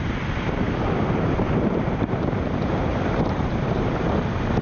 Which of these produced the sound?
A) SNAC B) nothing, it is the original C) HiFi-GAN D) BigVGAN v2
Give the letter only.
D